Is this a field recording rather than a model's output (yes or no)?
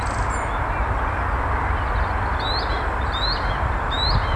yes